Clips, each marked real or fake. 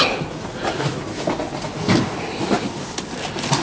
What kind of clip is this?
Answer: real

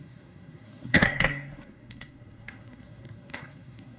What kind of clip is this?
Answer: fake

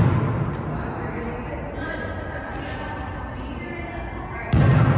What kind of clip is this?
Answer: real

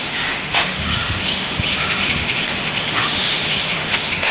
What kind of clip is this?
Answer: fake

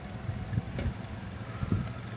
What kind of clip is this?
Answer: real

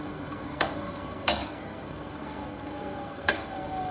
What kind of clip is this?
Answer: fake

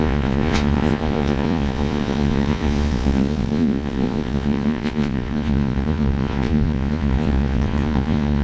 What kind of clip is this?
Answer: fake